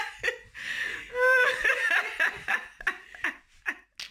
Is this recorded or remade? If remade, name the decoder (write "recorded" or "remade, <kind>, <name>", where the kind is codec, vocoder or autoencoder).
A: recorded